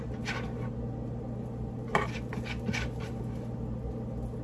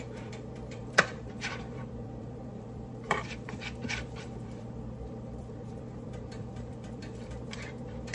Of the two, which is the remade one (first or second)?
second